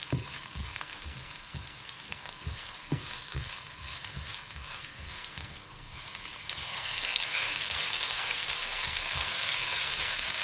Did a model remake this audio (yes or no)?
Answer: yes